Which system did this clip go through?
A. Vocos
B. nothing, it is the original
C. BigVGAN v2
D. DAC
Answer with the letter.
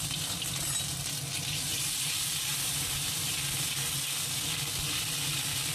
B